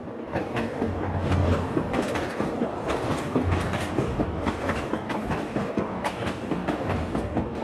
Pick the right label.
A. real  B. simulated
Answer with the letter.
B